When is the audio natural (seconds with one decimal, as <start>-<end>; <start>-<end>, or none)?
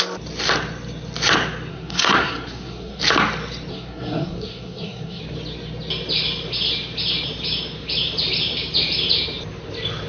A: 0.0-1.7; 3.0-3.7; 5.2-10.1